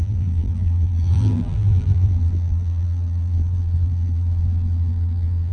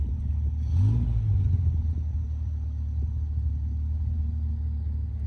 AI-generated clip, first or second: first